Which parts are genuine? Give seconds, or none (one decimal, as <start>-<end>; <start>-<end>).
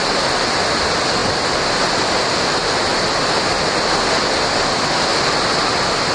0.0-6.1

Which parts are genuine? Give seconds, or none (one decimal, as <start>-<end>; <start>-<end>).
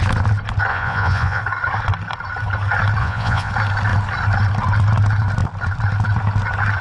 0.0-0.7; 1.4-3.0; 3.5-6.8